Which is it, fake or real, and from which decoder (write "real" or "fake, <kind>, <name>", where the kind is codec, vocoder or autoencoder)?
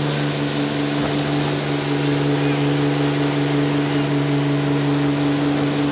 real